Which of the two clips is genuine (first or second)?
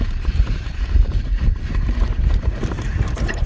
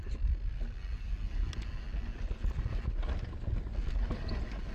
second